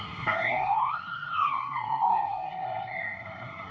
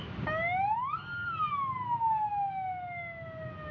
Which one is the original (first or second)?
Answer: second